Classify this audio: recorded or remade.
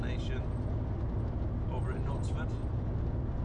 recorded